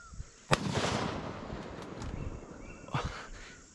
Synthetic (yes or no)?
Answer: no